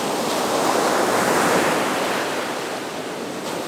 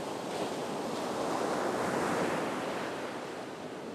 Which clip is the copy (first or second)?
first